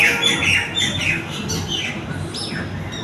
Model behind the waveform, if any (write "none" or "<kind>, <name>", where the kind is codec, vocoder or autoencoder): none